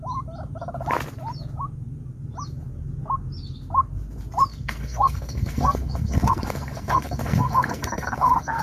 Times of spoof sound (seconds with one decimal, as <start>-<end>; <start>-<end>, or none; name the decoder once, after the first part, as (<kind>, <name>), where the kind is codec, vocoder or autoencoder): 4.5-8.6 (codec, SNAC)